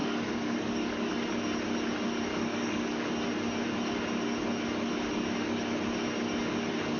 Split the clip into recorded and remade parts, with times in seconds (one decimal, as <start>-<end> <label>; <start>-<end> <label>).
0.0-1.1 remade; 1.1-2.3 recorded; 2.3-3.1 remade; 3.1-7.0 recorded